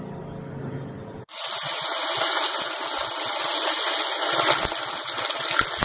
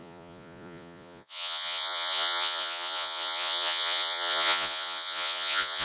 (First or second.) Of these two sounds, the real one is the first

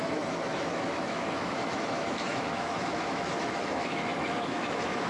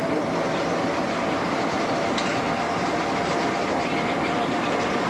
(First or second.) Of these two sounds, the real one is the second